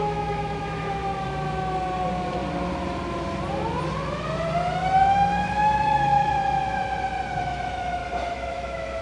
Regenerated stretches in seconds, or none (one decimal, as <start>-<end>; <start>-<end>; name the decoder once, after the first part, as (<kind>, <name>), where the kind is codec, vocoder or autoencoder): 0.0-1.0 (autoencoder, DAC-VAE); 4.7-6.8; 7.4-8.0; 8.5-9.0